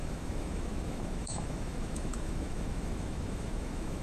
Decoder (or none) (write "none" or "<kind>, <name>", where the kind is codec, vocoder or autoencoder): autoencoder, DAC-VAE